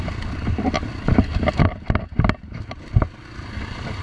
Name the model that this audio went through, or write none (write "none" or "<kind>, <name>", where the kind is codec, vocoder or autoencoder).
none